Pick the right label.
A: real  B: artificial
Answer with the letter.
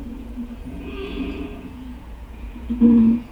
B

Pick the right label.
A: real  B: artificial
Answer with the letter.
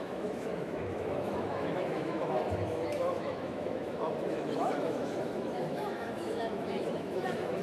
B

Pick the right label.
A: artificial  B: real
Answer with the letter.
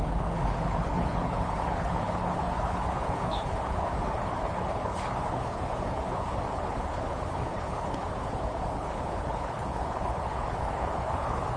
A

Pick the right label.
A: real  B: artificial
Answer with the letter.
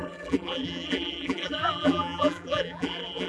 B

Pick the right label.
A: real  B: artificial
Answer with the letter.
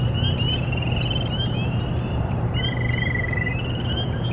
B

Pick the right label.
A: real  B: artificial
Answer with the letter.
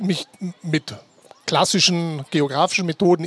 A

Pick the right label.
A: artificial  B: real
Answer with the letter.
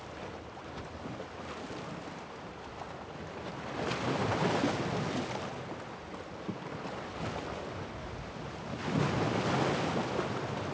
B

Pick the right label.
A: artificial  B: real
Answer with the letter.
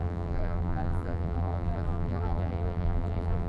A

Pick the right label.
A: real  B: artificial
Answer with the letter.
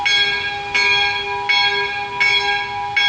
A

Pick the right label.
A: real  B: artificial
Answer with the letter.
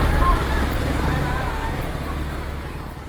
A